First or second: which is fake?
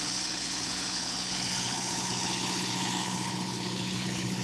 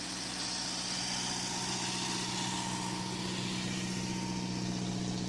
first